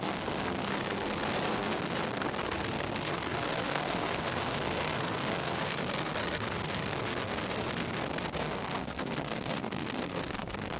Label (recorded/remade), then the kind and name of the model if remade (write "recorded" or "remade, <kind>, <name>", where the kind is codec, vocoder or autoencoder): remade, codec, SNAC